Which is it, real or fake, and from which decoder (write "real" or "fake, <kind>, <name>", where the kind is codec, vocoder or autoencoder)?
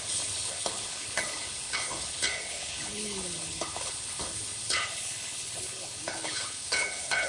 fake, codec, HILCodec